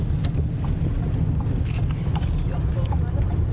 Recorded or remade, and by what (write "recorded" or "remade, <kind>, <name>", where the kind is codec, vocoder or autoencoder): recorded